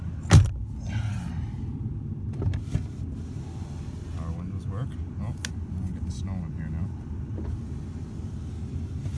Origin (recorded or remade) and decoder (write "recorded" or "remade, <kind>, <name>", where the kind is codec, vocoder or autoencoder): recorded